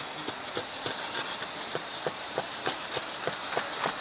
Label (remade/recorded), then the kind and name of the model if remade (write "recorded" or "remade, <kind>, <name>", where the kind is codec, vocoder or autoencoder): recorded